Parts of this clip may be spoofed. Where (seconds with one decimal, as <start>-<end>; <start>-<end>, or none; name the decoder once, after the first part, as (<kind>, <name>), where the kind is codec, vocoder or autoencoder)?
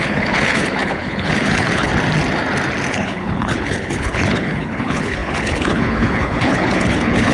0.0-1.9 (codec, HILCodec); 2.9-7.3